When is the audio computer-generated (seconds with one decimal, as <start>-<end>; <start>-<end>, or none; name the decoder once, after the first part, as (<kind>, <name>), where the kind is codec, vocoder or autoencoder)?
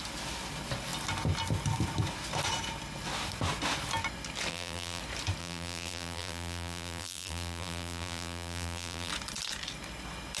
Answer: 4.5-5.0 (vocoder, BigVGAN v2); 5.4-9.1